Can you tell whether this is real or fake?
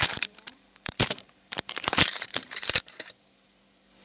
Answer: fake